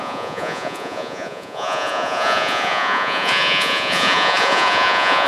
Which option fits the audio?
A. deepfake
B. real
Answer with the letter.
A